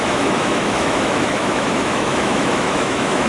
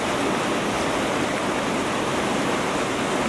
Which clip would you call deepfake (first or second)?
first